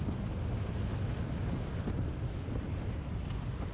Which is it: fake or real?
real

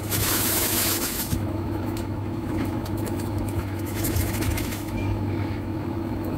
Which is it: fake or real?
fake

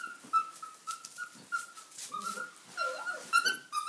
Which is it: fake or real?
real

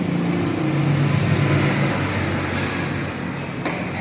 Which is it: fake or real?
real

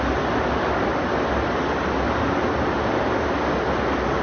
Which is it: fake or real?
real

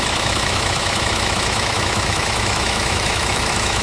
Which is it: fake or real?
fake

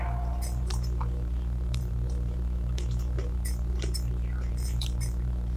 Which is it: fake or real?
fake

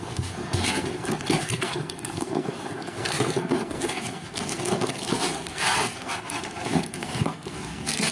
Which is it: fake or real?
fake